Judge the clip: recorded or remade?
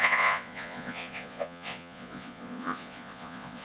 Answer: remade